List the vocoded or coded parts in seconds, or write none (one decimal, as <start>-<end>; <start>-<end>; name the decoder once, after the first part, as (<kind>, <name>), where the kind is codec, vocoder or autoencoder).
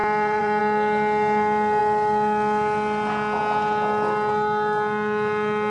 0.0-0.6 (vocoder, Vocos)